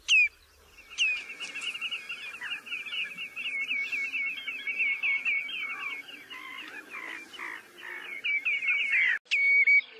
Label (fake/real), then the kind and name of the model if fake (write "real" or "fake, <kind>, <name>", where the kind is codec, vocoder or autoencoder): real